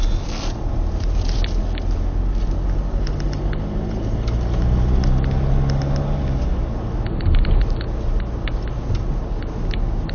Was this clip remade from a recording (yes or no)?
no